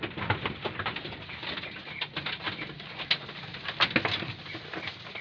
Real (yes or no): yes